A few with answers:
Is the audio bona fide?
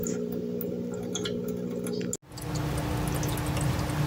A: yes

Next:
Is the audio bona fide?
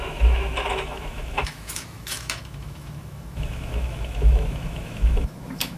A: no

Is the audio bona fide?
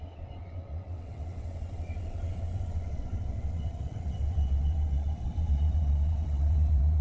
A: no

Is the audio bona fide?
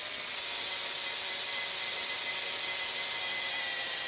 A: yes